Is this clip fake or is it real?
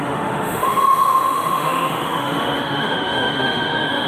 fake